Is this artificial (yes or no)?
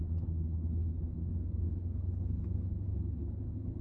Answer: yes